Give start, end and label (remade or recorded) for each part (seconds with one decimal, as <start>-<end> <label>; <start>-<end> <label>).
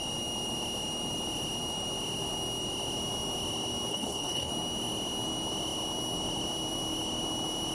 0.0-3.9 recorded; 3.9-4.5 remade; 4.5-7.7 recorded